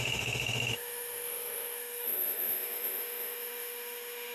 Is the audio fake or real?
fake